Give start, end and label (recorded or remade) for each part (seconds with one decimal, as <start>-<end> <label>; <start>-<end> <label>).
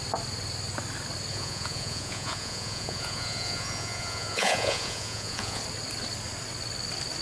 0.0-1.3 recorded; 1.3-5.6 remade; 5.6-7.2 recorded